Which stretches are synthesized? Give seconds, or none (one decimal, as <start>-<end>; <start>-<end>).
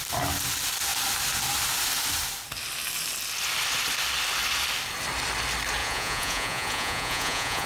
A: 5.8-7.7